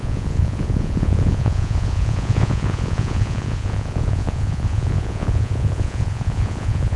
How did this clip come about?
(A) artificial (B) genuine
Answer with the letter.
A